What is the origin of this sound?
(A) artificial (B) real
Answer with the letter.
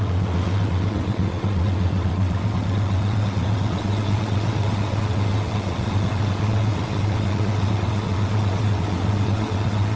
A